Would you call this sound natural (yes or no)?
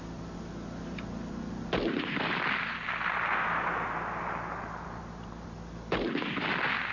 yes